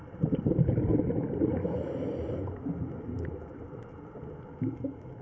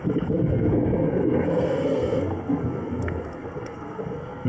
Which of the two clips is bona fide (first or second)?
first